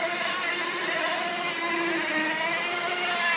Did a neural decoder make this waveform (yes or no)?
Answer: no